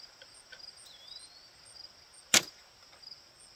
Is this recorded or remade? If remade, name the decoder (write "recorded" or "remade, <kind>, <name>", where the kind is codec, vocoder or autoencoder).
recorded